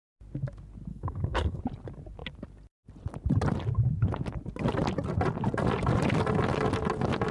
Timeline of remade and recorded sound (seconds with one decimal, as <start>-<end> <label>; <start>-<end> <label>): 0.0-0.9 recorded; 0.9-1.6 remade; 1.6-7.3 recorded